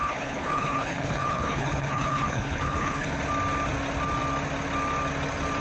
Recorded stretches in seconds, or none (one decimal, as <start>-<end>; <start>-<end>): 3.2-5.6